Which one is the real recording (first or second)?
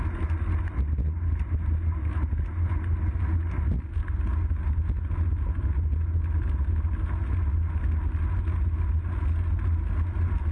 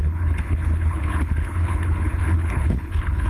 first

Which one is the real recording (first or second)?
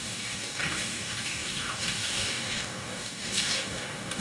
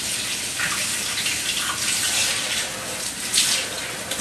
second